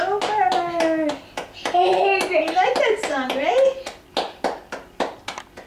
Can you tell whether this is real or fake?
real